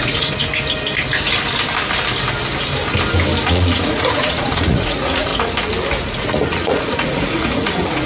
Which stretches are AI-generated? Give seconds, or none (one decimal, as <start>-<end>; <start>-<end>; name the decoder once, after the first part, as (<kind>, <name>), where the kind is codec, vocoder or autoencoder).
0.0-0.4 (vocoder, Vocos); 3.5-5.3; 6.0-8.1